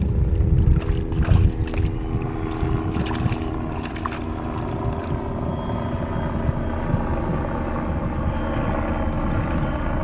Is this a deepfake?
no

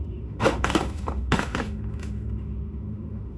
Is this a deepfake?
yes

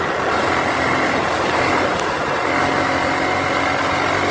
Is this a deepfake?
no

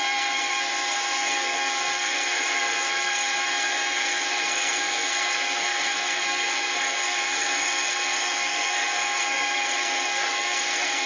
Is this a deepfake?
yes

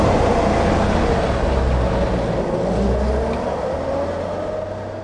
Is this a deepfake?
no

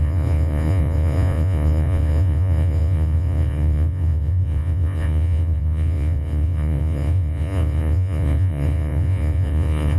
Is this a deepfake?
yes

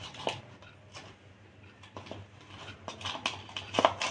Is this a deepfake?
no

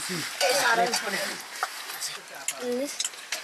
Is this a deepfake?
no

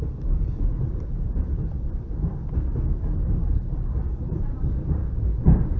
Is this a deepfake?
yes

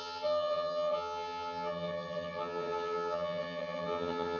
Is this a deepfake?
yes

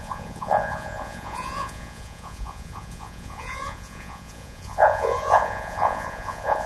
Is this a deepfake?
yes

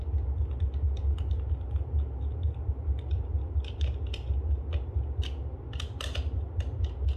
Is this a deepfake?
no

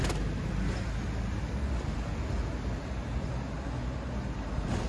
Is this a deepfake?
no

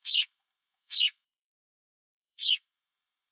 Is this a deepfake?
yes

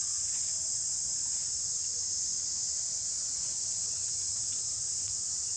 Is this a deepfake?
yes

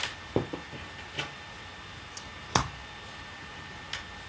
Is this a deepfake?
no